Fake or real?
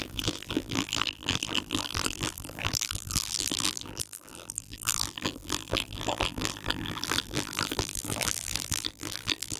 fake